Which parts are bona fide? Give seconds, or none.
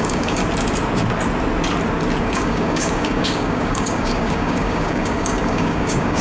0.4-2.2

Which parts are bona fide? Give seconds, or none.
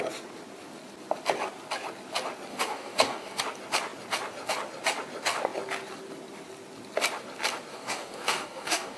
0.0-2.5; 3.4-7.7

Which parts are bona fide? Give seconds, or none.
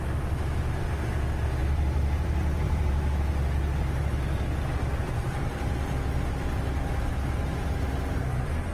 0.0-1.6; 2.9-8.7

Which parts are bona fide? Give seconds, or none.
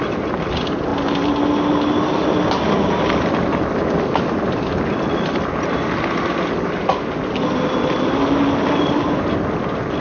0.0-10.0